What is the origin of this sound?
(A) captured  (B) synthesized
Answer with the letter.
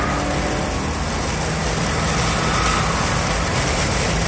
A